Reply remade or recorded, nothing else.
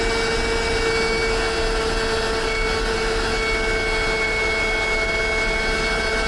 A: recorded